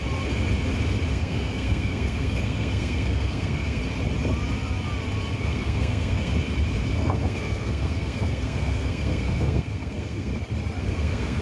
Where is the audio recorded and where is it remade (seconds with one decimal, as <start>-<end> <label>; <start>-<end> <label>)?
0.0-1.1 recorded; 1.1-3.8 remade; 3.8-5.4 recorded; 5.4-6.3 remade; 6.3-6.9 recorded; 6.9-10.3 remade; 10.3-10.8 recorded; 10.8-11.4 remade